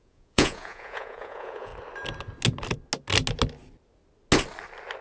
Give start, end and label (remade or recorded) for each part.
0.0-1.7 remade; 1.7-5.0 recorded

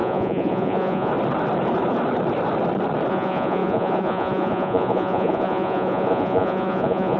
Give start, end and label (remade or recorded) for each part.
0.0-1.1 remade; 1.1-3.1 recorded; 3.1-7.2 remade

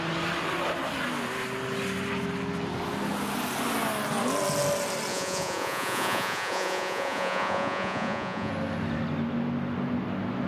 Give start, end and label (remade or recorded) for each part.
0.0-5.1 recorded; 5.1-8.5 remade; 8.5-10.5 recorded

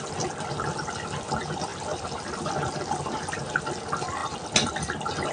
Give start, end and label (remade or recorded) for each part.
0.0-5.3 recorded